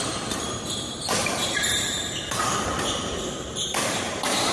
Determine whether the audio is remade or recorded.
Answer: remade